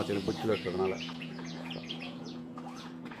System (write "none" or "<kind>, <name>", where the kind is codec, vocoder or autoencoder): vocoder, Vocos